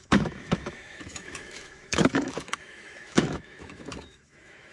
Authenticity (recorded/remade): remade